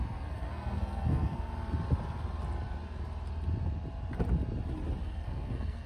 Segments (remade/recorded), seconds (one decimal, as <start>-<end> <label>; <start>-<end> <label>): 0.0-1.5 remade; 1.5-5.0 recorded; 5.0-5.9 remade